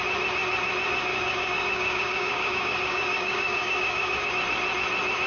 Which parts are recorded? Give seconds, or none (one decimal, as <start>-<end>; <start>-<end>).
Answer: 0.0-1.1; 4.3-5.3

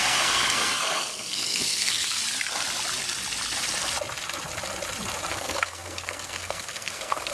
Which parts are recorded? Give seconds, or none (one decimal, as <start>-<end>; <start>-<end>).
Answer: 2.2-5.3

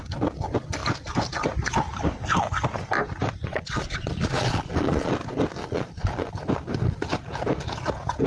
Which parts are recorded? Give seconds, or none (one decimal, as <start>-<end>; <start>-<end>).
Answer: 0.0-3.5; 5.1-5.6; 6.3-8.3

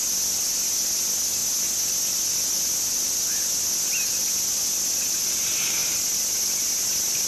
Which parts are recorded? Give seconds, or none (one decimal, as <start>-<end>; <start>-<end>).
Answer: 0.0-7.3

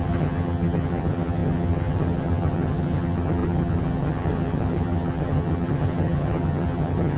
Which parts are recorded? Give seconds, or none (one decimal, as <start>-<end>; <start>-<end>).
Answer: none

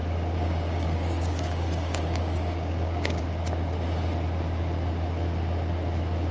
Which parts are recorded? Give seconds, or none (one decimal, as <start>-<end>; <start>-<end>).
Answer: 3.2-6.3

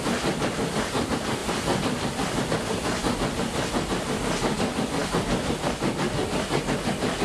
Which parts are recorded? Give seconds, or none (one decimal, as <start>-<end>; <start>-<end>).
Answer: 0.0-1.4; 2.4-5.0; 5.6-7.2

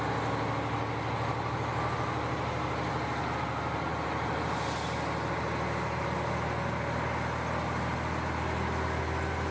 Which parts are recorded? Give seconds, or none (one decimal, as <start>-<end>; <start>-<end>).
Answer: 0.0-9.5